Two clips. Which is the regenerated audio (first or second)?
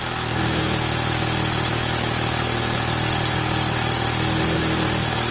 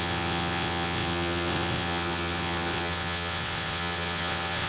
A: second